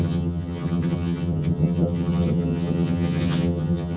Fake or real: fake